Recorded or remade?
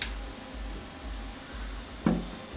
recorded